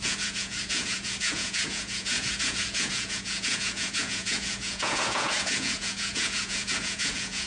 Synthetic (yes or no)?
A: yes